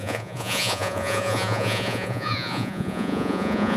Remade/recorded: remade